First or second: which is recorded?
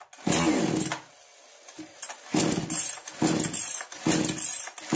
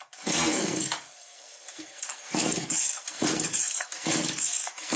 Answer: first